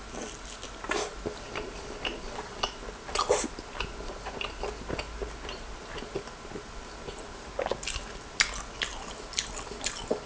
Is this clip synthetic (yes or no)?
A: no